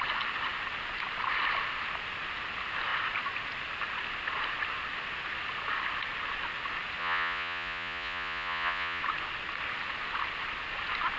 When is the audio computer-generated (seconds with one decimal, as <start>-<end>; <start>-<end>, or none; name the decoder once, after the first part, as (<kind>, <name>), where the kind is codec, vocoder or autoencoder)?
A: 7.0-9.0 (vocoder, Vocos)